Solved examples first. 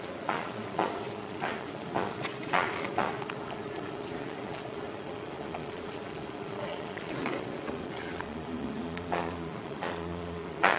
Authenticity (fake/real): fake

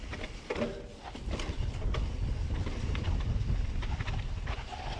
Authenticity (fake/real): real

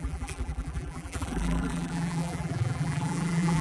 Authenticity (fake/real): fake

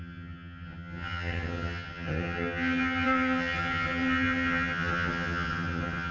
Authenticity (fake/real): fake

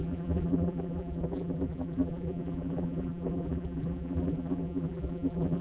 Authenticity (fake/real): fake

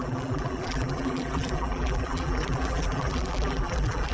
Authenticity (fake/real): fake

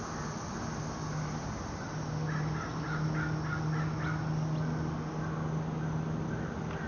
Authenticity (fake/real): real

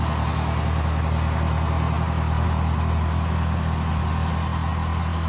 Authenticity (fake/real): real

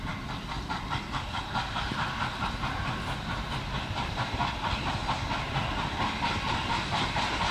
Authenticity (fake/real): real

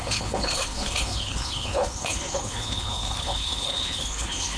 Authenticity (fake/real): fake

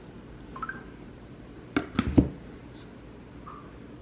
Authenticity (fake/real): real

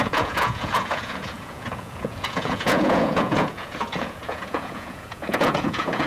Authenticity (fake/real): fake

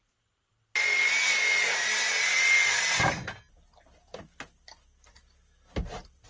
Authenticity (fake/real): real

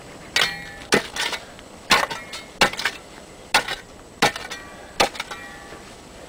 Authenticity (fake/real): real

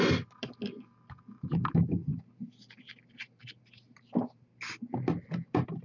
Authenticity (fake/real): real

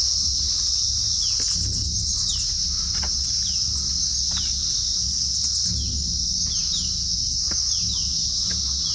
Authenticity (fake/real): real